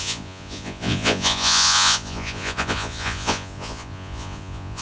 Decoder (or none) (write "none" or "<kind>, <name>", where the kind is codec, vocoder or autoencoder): vocoder, Vocos